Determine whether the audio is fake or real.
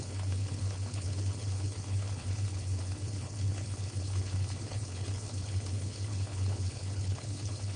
fake